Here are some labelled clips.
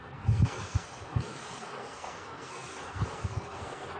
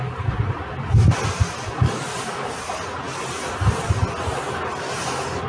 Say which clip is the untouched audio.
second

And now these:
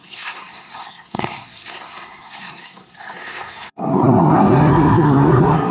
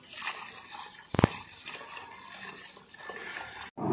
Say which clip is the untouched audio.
second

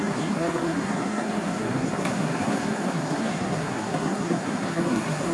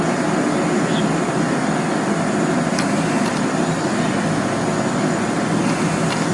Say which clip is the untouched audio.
second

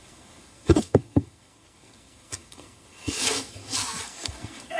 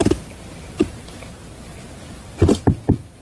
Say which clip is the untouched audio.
second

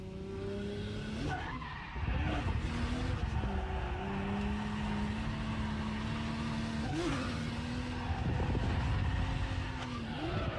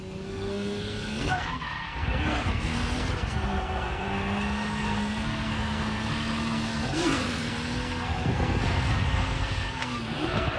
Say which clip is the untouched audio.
first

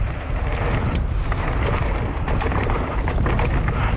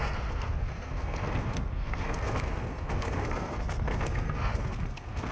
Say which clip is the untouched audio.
first